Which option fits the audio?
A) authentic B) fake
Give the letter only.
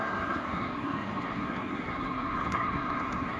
B